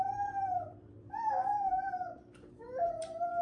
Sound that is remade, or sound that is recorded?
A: remade